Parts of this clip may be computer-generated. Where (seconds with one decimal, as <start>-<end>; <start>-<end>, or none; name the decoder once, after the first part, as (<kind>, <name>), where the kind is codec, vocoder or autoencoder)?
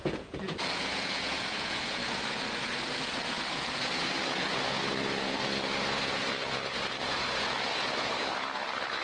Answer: 0.0-9.0 (vocoder, Vocos)